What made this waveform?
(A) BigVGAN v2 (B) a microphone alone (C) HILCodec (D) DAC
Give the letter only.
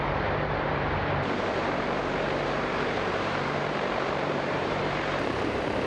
A